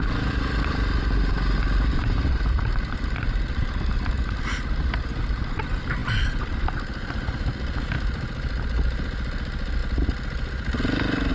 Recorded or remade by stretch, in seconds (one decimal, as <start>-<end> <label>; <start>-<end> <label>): 0.0-11.3 recorded

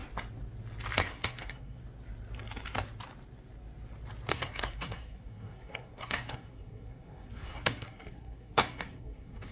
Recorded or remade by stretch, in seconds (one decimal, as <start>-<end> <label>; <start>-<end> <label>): 0.0-1.0 recorded; 1.0-1.8 remade; 1.8-4.3 recorded; 4.3-9.5 remade

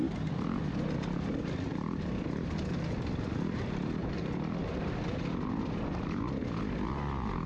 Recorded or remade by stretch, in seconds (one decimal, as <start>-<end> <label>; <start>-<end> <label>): 0.0-7.5 recorded

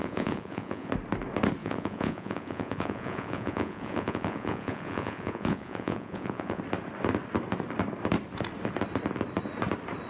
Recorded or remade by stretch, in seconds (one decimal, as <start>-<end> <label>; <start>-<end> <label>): 0.0-0.9 remade; 0.9-1.6 recorded; 1.6-6.6 remade; 6.6-10.1 recorded